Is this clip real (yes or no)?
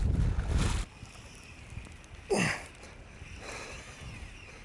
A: yes